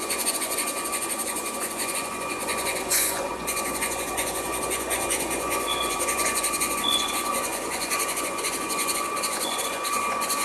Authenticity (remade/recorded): remade